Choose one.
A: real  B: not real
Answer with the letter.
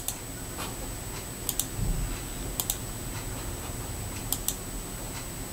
A